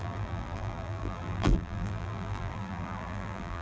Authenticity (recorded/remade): remade